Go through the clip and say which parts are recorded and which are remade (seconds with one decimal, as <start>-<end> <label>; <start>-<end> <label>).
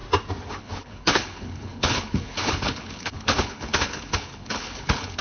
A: 0.0-0.5 recorded; 0.5-5.2 remade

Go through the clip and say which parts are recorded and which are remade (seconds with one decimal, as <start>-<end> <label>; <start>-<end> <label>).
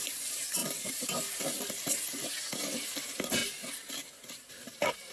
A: 0.0-0.6 recorded; 0.6-1.7 remade; 1.7-5.1 recorded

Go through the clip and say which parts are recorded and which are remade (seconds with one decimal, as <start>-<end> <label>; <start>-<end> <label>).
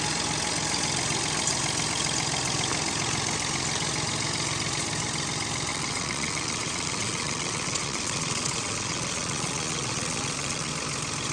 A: 0.0-5.7 recorded; 5.7-10.7 remade; 10.7-11.3 recorded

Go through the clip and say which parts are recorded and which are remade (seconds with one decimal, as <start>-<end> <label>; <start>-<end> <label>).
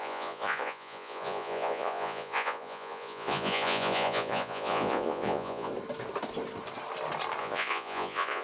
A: 0.0-5.7 remade; 5.7-7.4 recorded; 7.4-8.4 remade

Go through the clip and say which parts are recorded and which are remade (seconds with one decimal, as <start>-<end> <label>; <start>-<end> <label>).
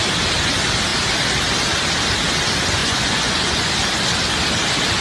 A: 0.0-2.8 recorded; 2.8-3.7 remade; 3.7-5.0 recorded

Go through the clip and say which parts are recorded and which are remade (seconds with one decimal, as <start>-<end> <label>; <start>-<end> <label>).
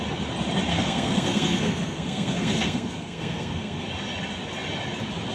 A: 0.0-0.7 recorded; 0.7-3.9 remade; 3.9-5.3 recorded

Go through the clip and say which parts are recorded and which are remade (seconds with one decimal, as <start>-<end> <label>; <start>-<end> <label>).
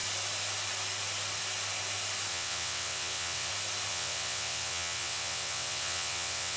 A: 0.0-2.3 recorded; 2.3-3.5 remade; 3.5-3.9 recorded; 3.9-6.6 remade